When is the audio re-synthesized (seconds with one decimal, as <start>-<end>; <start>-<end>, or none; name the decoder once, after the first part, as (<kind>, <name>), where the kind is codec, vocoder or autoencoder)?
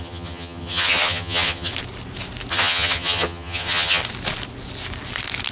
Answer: 0.0-1.7 (vocoder, HiFi-GAN); 2.5-4.0